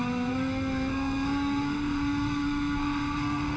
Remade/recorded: remade